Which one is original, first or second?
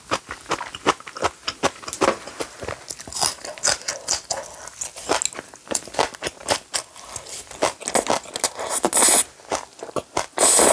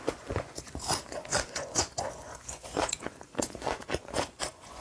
first